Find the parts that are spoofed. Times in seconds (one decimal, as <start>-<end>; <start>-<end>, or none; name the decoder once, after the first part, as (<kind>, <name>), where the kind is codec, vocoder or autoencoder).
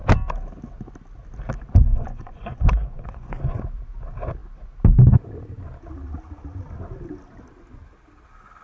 1.9-3.6 (vocoder, Vocos)